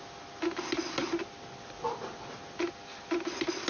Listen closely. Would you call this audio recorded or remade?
recorded